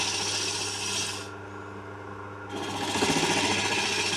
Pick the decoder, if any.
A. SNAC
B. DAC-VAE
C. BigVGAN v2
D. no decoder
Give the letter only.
D